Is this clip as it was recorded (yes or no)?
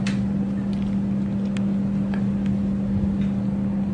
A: yes